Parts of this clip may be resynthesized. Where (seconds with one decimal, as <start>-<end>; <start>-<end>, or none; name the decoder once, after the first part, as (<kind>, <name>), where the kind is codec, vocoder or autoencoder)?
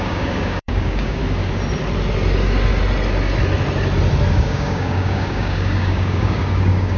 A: 0.0-1.2 (codec, DAC); 4.3-7.0